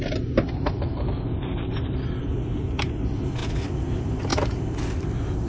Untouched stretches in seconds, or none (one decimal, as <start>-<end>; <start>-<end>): none